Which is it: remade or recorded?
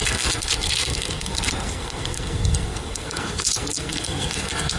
remade